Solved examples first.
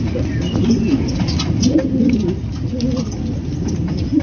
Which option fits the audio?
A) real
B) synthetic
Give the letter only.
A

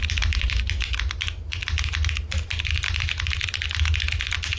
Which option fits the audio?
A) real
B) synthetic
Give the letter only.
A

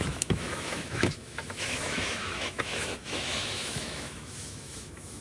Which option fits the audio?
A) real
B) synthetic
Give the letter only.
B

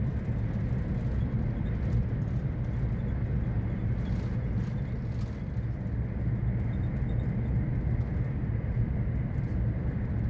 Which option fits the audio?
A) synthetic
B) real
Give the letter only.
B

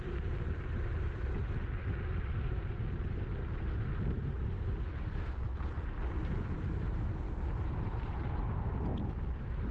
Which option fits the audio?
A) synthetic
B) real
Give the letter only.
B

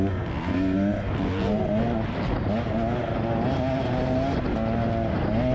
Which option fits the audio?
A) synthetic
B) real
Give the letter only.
B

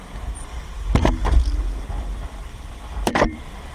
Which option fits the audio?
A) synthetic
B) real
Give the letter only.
A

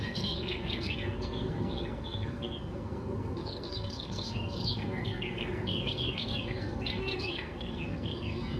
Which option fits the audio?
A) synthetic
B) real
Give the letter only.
A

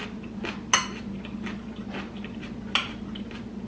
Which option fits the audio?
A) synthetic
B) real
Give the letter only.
B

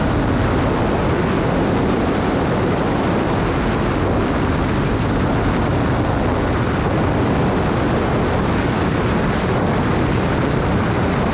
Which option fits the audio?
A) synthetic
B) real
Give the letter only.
B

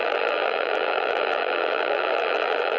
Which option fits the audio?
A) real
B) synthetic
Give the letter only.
B